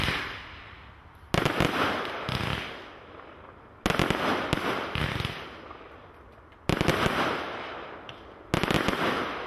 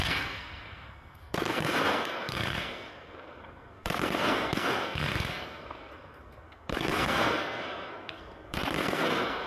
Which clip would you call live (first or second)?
first